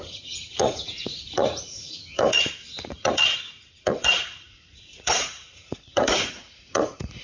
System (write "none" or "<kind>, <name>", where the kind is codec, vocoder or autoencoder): vocoder, Vocos